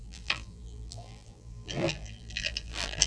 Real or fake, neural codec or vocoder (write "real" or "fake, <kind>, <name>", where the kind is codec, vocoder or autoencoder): fake, vocoder, BigVGAN v2